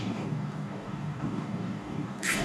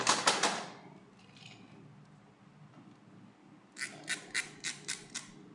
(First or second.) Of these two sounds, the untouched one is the second